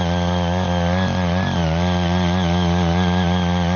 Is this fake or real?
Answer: real